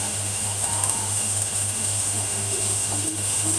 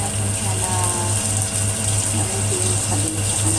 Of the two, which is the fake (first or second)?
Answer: first